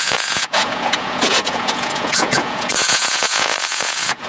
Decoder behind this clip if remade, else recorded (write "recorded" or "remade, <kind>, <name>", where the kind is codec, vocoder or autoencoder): remade, vocoder, Vocos